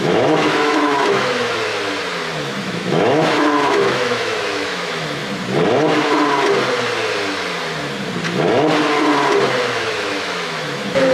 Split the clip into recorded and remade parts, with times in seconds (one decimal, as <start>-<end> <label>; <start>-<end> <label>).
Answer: 0.0-1.7 remade; 1.7-2.4 recorded; 2.4-5.2 remade; 5.2-9.7 recorded; 9.7-11.1 remade